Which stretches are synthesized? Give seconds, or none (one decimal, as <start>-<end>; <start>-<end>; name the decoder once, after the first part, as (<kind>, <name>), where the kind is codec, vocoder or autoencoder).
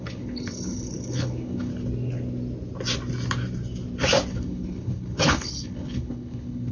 0.0-1.7 (codec, HILCodec); 4.3-6.7